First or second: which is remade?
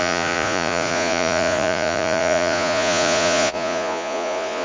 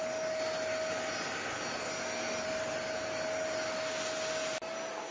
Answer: first